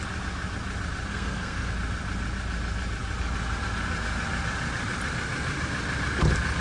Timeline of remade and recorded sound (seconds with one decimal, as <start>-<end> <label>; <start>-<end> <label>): 0.0-1.1 recorded; 1.1-1.7 remade; 1.7-6.6 recorded

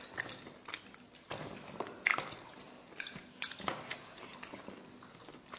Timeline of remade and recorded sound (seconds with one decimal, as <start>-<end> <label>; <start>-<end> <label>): 0.0-5.6 recorded